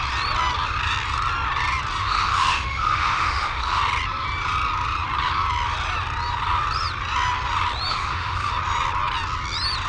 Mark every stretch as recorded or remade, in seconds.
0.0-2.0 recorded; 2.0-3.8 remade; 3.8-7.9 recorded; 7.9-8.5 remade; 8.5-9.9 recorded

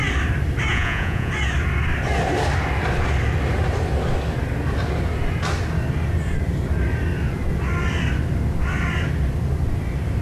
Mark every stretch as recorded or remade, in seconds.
0.0-0.7 recorded; 0.7-1.3 remade; 1.3-10.2 recorded

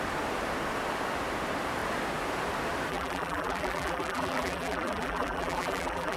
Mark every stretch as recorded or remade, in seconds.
0.0-2.9 recorded; 2.9-6.2 remade

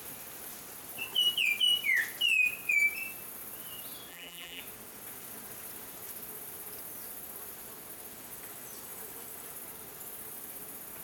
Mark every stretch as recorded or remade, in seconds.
0.0-4.1 recorded; 4.1-4.6 remade; 4.6-11.0 recorded

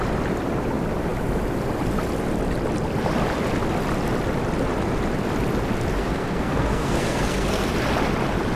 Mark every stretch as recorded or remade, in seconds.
0.0-6.0 recorded; 6.0-7.7 remade; 7.7-8.6 recorded

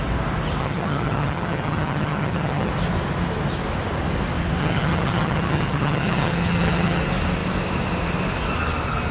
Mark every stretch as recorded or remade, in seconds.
0.0-0.6 recorded; 0.6-2.7 remade; 2.7-4.6 recorded; 4.6-7.0 remade; 7.0-9.1 recorded

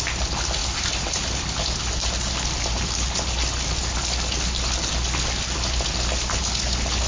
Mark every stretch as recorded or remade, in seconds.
0.0-7.1 recorded